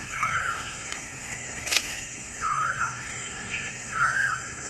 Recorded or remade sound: remade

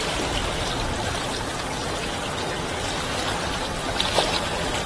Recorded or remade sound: recorded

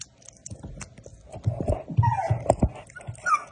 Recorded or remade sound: recorded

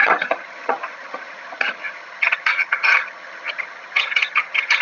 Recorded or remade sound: remade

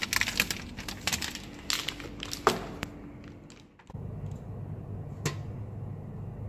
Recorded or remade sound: recorded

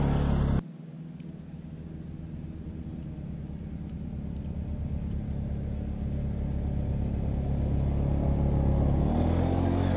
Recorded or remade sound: recorded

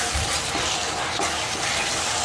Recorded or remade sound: recorded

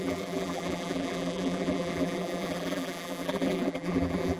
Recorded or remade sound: remade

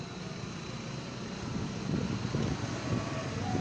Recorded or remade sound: recorded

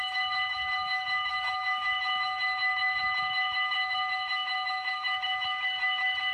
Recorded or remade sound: remade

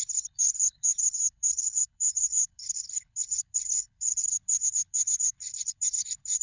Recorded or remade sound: remade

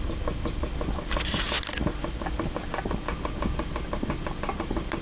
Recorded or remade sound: recorded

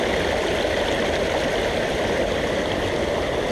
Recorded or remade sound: recorded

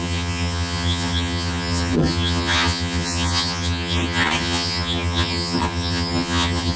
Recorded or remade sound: remade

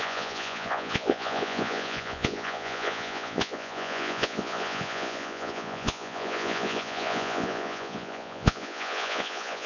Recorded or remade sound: remade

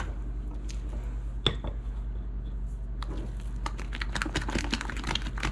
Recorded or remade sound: recorded